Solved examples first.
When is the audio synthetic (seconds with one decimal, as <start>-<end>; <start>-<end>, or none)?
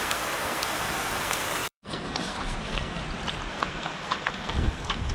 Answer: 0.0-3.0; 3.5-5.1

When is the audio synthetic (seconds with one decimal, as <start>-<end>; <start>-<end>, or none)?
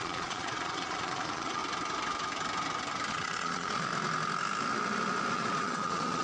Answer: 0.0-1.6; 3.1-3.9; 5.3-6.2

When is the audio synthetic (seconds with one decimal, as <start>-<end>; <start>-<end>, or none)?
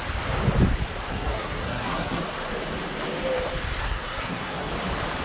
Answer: 1.1-2.2; 3.8-4.7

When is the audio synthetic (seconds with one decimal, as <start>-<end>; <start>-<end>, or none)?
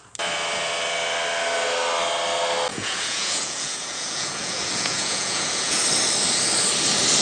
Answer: 2.7-5.8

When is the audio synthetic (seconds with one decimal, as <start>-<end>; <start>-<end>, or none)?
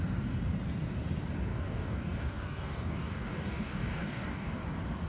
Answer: 1.5-4.6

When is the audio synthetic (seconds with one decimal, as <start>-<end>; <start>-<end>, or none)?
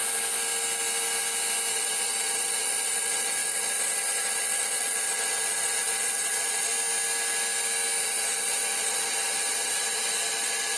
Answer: 1.7-6.7; 8.0-10.8